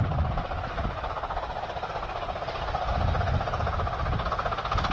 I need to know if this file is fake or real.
real